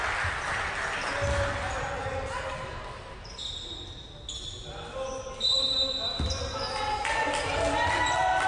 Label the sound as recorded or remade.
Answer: recorded